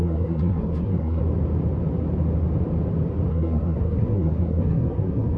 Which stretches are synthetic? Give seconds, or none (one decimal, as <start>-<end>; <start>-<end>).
0.0-1.2; 3.3-5.4